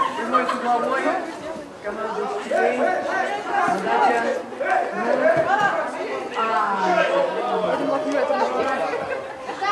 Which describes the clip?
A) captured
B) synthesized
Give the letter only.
A